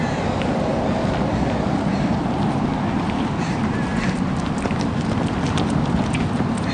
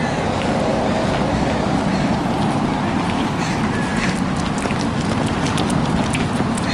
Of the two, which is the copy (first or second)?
first